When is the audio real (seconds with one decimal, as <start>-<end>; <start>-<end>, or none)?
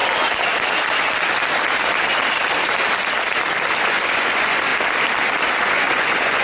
0.0-3.8; 4.7-5.6